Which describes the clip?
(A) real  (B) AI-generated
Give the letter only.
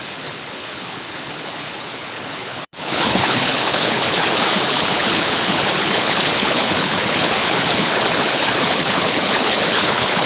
B